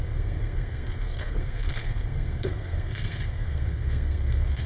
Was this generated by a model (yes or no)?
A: yes